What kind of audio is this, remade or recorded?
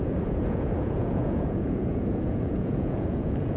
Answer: remade